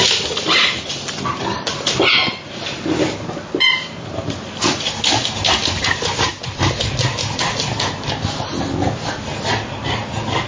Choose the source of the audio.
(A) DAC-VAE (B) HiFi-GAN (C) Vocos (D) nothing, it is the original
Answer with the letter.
D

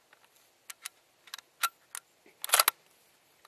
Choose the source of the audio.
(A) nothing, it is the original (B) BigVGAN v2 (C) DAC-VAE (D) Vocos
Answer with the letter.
A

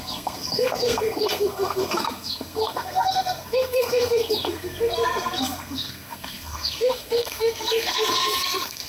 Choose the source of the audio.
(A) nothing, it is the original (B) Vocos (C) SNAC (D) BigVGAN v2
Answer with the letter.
C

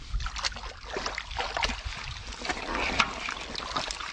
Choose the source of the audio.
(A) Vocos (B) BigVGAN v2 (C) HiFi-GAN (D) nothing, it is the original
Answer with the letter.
D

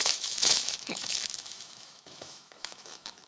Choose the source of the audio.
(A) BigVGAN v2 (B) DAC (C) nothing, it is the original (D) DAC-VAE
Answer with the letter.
D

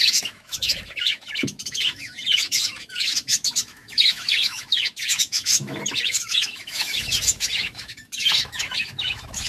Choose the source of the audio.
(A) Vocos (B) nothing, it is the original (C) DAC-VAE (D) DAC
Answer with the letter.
C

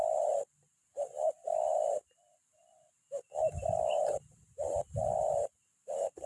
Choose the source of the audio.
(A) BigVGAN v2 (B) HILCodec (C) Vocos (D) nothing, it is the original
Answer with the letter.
D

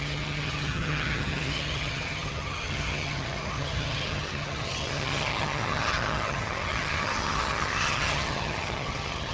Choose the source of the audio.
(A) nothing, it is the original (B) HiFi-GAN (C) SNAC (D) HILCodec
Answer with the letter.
B